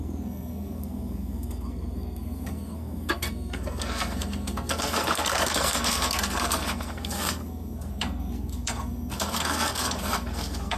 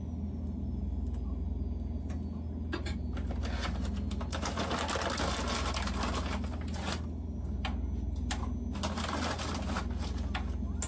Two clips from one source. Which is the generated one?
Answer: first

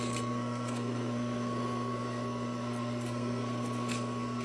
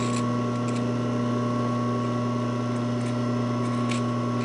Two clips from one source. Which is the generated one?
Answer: first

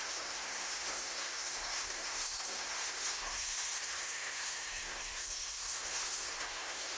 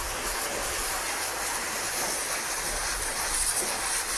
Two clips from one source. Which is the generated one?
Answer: first